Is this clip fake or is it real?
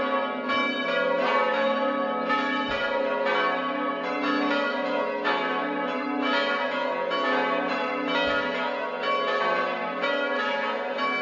real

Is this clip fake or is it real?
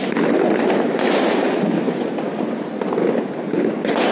real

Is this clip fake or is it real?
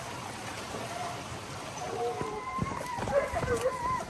real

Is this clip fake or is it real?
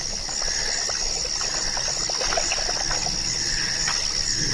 real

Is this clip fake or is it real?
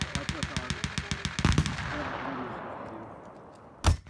real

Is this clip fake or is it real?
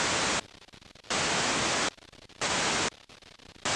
real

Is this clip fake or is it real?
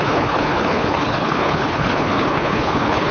fake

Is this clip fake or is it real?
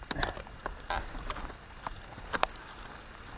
real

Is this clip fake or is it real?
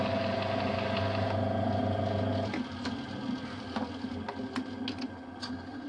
real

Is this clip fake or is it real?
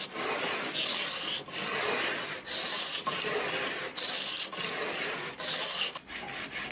real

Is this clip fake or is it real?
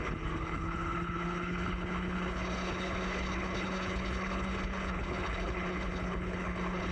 fake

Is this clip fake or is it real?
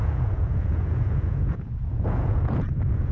fake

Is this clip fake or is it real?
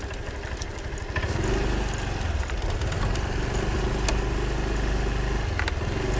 real